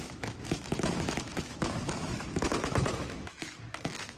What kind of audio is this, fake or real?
fake